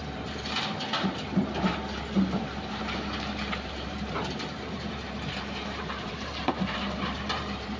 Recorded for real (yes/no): no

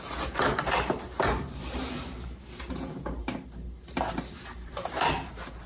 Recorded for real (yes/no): no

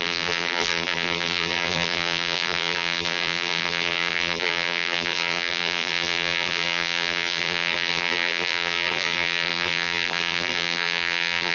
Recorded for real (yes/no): no